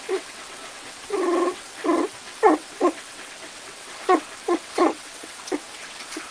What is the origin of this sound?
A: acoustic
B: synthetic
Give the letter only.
B